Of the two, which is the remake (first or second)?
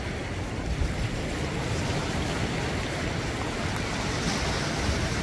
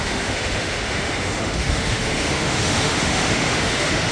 second